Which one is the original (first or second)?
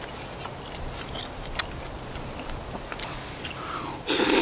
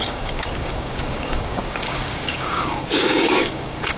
first